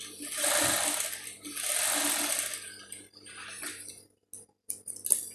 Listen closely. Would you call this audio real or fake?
real